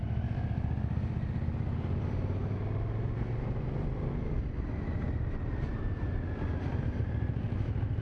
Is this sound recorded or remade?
recorded